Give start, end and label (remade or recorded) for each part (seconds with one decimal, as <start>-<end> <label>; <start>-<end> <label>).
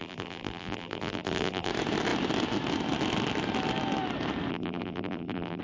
0.0-1.7 remade; 1.7-4.5 recorded; 4.5-5.6 remade